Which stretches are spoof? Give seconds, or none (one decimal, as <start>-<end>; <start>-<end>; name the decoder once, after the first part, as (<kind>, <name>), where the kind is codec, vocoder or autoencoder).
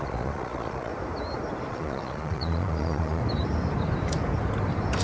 0.0-0.9 (vocoder, Vocos); 1.7-3.2